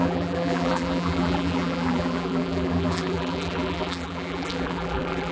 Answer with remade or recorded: remade